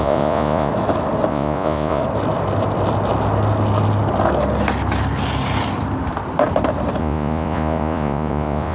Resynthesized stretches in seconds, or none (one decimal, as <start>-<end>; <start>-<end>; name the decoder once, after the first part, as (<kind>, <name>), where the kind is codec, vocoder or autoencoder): 0.0-0.7 (vocoder, Vocos); 1.3-2.0; 7.0-8.7